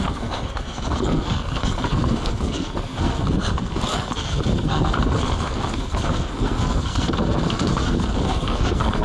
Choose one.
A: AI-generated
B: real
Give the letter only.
A